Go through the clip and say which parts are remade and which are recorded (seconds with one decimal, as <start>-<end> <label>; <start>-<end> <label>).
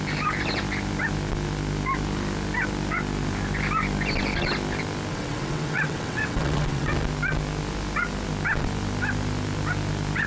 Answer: 0.0-5.1 recorded; 5.1-6.9 remade; 6.9-10.3 recorded